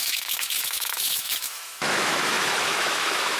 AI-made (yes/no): yes